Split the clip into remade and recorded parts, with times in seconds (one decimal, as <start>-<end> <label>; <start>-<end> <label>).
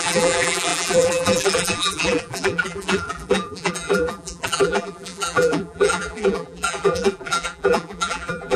0.0-8.6 remade